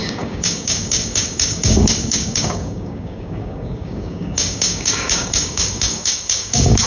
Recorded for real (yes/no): no